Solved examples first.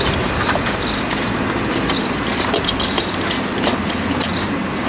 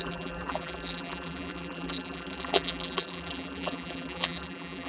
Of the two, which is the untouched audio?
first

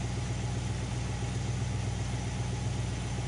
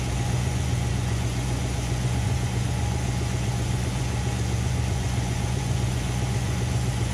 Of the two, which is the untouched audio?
first